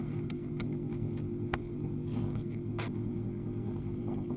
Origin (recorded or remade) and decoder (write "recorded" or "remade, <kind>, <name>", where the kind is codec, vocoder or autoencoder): remade, codec, SNAC